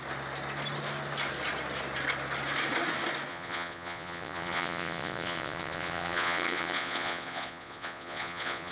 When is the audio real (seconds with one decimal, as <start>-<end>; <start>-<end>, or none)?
0.0-3.3